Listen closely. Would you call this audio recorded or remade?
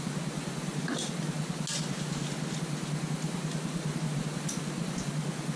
recorded